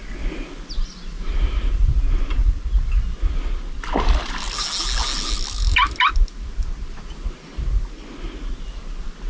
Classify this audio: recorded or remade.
recorded